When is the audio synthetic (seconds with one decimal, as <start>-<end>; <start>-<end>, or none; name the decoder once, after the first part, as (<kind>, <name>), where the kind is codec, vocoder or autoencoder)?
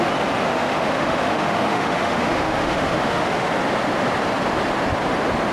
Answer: 0.5-3.5 (autoencoder, DAC-VAE)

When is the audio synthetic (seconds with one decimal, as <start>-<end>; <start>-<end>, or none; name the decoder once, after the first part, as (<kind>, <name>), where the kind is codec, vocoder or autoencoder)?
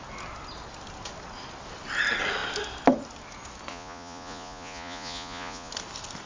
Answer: 3.7-5.7 (vocoder, Vocos)